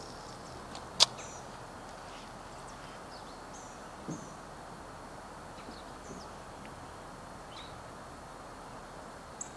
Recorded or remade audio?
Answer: recorded